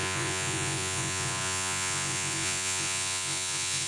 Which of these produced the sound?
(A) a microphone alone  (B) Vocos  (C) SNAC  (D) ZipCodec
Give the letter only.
B